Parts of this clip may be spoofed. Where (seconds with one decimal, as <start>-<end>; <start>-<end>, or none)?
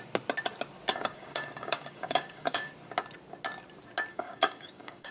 0.9-2.7; 4.1-5.1